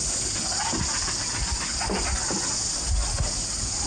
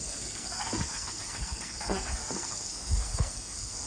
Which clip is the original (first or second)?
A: first